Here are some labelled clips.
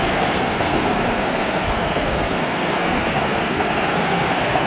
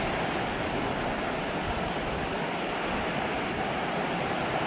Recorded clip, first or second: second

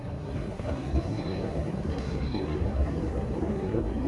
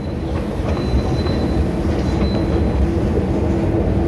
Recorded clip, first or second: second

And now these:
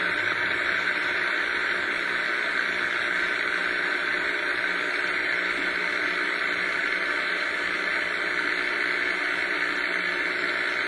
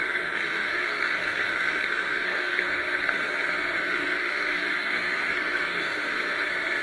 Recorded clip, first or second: first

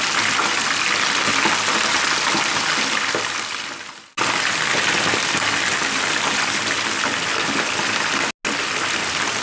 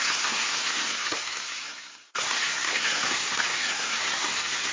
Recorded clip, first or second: first